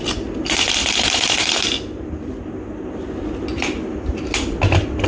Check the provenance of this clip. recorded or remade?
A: recorded